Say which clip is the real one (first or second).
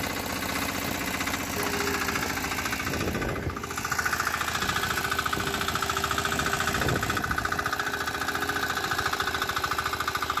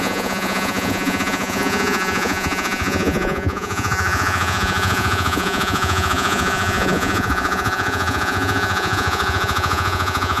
first